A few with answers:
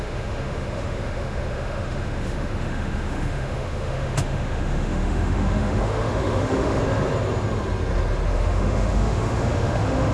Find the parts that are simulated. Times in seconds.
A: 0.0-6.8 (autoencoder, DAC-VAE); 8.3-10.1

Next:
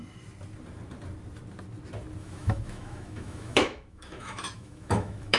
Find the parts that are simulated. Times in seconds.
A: 2.2-5.4 (autoencoder, DAC-VAE)

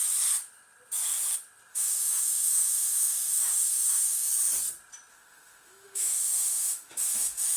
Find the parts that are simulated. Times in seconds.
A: 1.7-4.3 (autoencoder, DAC-VAE); 5.1-7.6

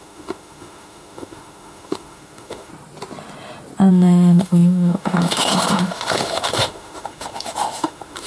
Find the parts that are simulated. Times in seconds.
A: 0.0-2.7 (autoencoder, DAC-VAE); 3.9-8.3